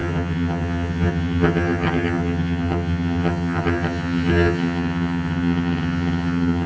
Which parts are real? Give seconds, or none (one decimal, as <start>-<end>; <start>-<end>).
none